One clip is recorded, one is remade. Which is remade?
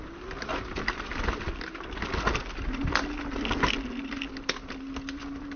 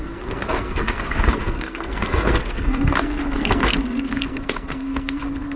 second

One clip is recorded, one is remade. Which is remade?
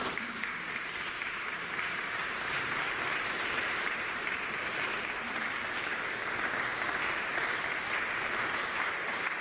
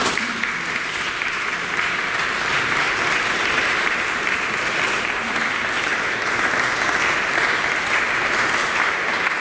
first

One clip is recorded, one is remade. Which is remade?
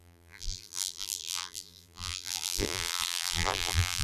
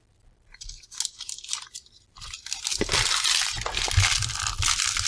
first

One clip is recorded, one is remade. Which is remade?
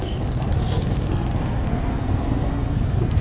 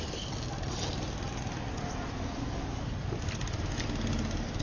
first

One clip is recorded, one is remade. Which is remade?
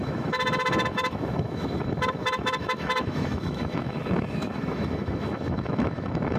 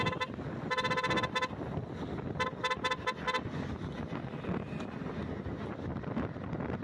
first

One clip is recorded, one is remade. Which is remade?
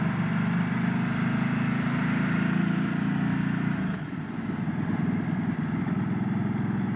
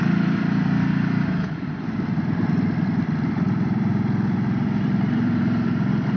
second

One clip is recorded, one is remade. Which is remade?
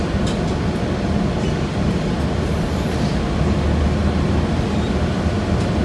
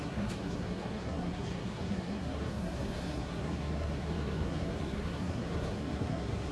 second